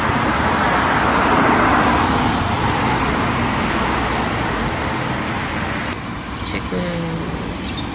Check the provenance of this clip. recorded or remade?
recorded